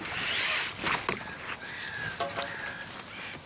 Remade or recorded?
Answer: recorded